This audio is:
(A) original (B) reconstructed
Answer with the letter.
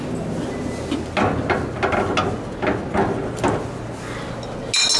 A